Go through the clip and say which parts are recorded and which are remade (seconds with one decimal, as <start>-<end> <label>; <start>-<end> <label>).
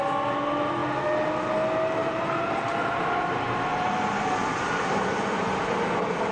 0.0-2.0 recorded; 2.0-5.8 remade; 5.8-6.3 recorded